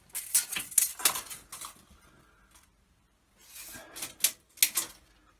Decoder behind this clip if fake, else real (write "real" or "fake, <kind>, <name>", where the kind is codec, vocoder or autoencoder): real